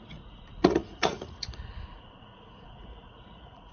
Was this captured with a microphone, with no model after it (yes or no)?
no